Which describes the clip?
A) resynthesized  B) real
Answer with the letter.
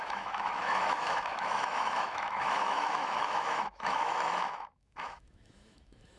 A